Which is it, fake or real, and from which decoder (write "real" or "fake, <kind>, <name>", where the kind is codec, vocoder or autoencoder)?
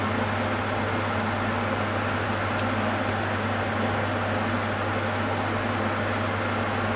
real